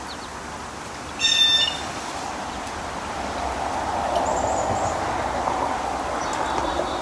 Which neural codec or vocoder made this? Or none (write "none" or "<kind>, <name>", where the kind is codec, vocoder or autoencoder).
none